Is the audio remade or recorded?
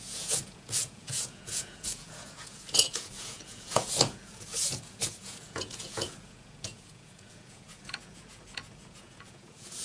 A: remade